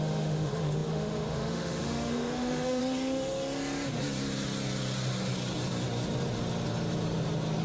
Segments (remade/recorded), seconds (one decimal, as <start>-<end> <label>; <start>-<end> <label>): 0.0-2.8 remade; 2.8-7.6 recorded